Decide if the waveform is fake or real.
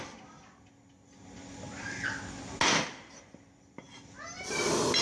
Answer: real